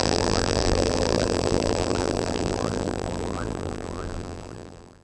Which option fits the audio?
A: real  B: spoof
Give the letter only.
B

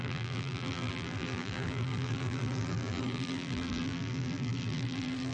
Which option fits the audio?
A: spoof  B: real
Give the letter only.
A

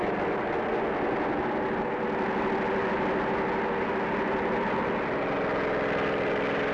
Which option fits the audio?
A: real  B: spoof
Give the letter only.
A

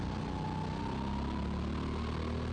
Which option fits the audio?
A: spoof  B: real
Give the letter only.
B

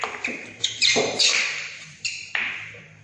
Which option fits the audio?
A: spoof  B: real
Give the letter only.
A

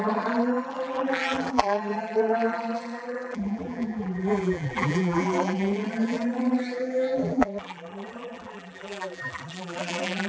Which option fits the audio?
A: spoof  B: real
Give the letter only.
A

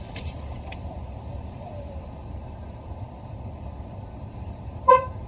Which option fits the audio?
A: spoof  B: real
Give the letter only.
A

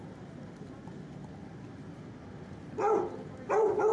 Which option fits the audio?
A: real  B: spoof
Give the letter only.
B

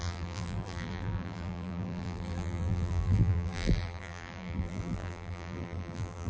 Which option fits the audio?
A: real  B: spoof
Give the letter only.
B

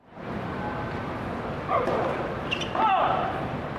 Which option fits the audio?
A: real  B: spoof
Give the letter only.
B